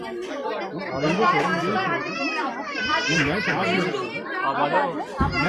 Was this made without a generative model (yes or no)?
yes